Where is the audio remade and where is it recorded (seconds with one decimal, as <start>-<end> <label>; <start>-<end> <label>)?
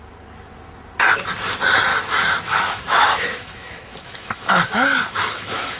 0.0-1.9 recorded; 1.9-5.8 remade